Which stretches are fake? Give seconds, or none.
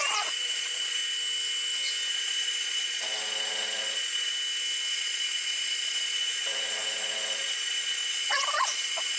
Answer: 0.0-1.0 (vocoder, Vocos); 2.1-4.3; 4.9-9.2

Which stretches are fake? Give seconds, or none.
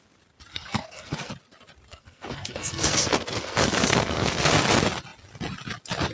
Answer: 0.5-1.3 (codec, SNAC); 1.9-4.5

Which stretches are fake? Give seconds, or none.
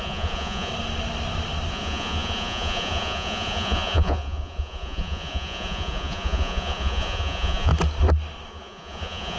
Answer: 0.0-0.7 (vocoder, Vocos); 1.7-7.7; 8.5-9.4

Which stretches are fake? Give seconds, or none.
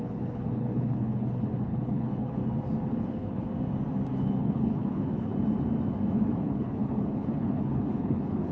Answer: 0.0-2.4 (codec, HILCodec); 3.0-3.5; 4.2-5.3; 6.4-8.5